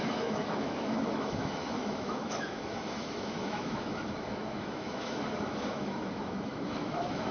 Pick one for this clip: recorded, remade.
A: remade